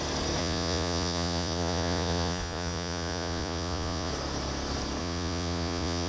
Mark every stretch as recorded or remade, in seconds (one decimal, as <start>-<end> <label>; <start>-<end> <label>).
0.0-0.4 recorded; 0.4-4.1 remade; 4.1-5.0 recorded; 5.0-6.1 remade